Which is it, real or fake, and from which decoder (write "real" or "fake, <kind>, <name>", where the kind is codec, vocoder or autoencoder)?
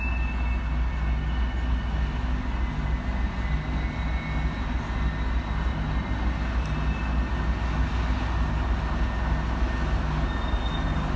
real